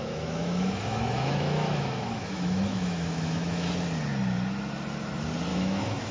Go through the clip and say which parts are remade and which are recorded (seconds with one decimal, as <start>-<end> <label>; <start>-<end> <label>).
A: 0.0-3.7 remade; 3.7-5.5 recorded; 5.5-6.1 remade